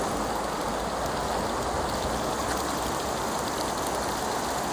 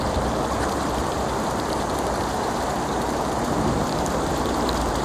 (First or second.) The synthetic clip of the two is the second